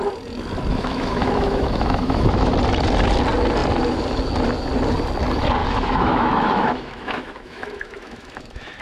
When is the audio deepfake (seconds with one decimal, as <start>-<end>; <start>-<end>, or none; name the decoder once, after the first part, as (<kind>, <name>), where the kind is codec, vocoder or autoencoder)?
0.7-2.5 (autoencoder, DAC-VAE); 5.6-8.8